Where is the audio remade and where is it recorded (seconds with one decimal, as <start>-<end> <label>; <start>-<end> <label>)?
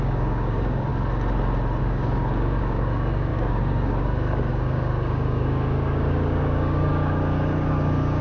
0.0-0.9 remade; 0.9-1.8 recorded; 1.8-8.2 remade